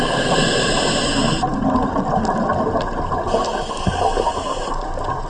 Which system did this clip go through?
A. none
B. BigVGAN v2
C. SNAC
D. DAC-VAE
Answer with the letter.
A